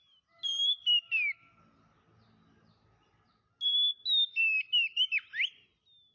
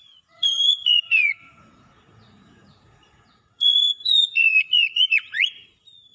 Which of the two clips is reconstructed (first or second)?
second